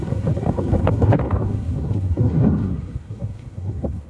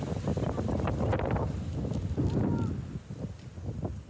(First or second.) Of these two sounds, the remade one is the first